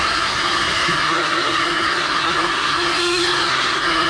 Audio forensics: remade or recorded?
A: remade